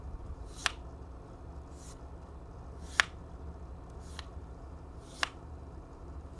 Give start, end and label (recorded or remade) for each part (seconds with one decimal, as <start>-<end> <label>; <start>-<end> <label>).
0.0-0.6 remade; 0.6-4.4 recorded; 4.4-6.4 remade